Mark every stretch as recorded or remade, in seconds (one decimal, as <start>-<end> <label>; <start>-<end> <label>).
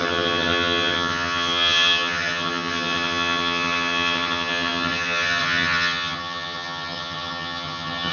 0.0-8.1 remade